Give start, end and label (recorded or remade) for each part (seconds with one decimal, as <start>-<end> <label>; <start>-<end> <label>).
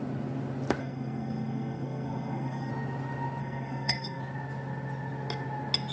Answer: 0.0-0.8 recorded; 0.8-2.7 remade; 2.7-3.4 recorded; 3.4-4.2 remade; 4.2-5.9 recorded